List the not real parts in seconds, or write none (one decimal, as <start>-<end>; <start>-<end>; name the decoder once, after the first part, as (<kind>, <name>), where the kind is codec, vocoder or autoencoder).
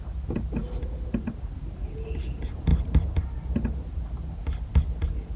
none